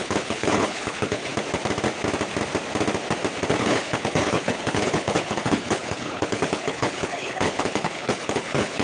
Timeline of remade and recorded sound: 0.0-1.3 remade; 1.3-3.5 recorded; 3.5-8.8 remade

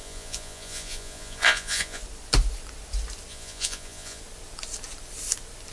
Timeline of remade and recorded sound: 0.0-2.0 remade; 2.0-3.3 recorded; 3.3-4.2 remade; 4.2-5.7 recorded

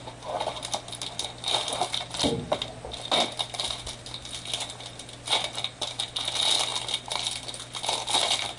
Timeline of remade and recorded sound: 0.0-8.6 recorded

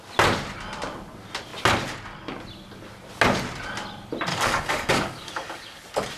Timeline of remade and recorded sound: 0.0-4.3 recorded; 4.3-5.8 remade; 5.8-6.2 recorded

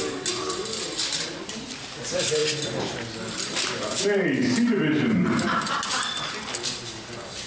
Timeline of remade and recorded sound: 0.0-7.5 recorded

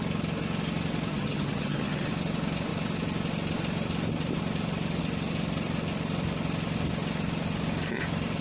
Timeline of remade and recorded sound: 0.0-1.1 recorded; 1.1-2.1 remade; 2.1-8.4 recorded

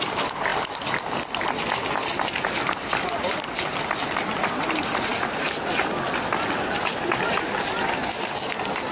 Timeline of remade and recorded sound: 0.0-8.9 recorded

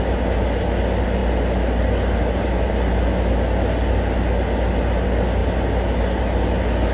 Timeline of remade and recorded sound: 0.0-6.9 recorded